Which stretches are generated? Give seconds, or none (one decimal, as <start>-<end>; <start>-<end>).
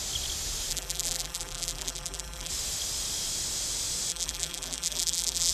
0.7-2.5; 4.1-5.5